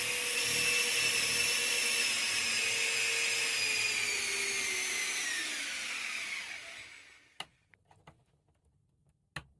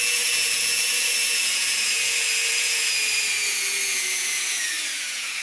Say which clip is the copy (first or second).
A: second